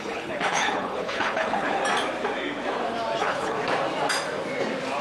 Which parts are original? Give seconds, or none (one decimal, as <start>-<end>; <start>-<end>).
1.8-3.2; 3.6-5.0

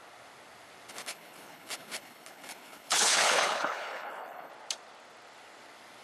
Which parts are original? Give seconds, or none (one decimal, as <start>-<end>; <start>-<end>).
0.0-0.9; 4.5-6.0

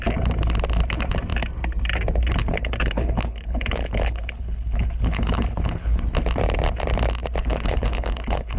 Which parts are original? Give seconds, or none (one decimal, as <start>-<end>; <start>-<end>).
0.0-2.4; 6.0-7.4

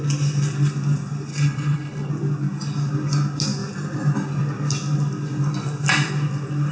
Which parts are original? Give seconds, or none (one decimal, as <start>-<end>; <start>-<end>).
0.0-1.3; 2.1-6.7

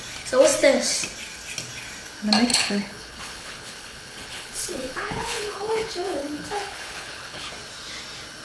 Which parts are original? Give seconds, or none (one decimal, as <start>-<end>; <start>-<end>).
0.0-2.5; 7.5-8.4

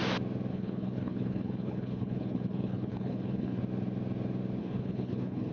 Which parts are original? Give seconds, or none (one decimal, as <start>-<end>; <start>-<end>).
0.0-0.5; 3.6-4.6

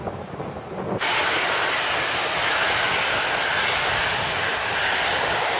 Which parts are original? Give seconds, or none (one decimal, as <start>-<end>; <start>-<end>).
0.0-5.6